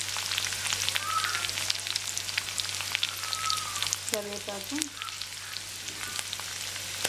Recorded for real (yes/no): yes